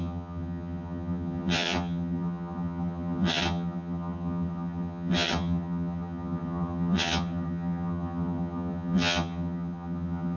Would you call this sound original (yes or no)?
no